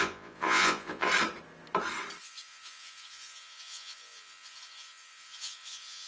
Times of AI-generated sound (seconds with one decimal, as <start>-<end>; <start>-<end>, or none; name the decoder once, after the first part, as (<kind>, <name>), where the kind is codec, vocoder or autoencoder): 0.0-1.1 (vocoder, Vocos); 2.2-6.1